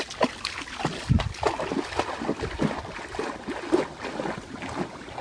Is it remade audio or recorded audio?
recorded